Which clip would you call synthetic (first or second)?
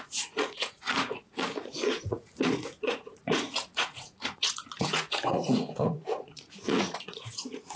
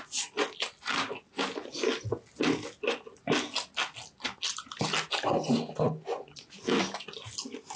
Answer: first